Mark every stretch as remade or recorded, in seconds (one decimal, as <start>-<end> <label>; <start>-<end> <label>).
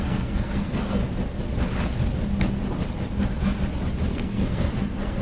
0.0-1.0 remade; 1.0-4.1 recorded; 4.1-5.2 remade